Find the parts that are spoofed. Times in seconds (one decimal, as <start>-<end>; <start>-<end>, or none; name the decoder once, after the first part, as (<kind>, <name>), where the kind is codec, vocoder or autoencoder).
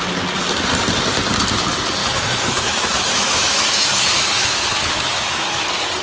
2.0-5.6 (autoencoder, DAC-VAE)